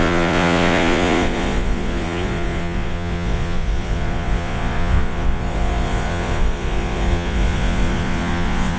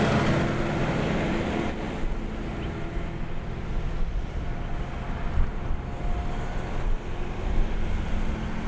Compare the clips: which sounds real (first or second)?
second